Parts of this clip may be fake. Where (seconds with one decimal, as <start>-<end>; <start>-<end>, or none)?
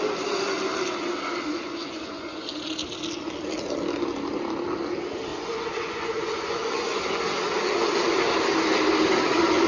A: 1.5-2.6; 5.3-7.2